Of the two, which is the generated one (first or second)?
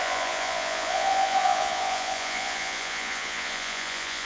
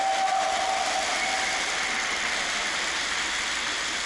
first